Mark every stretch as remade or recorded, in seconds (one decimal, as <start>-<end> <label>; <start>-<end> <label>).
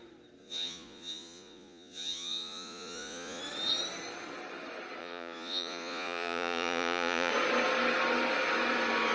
0.0-0.4 recorded; 0.4-3.4 remade; 3.4-5.0 recorded; 5.0-7.3 remade; 7.3-9.1 recorded